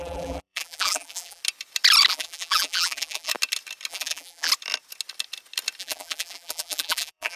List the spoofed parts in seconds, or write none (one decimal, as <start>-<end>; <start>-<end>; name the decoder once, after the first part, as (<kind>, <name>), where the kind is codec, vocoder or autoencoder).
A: 0.0-1.4 (vocoder, BigVGAN v2); 2.1-3.3; 3.9-4.5; 5.8-7.4